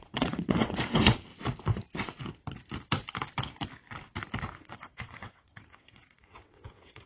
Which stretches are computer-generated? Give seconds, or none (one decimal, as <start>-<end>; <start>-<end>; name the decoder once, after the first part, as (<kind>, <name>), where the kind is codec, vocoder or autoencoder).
0.0-1.3 (vocoder, WaveNeXt); 4.5-7.1